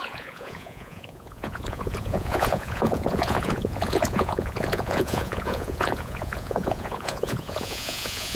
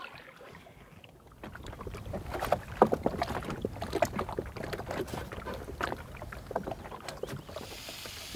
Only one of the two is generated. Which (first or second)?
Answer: first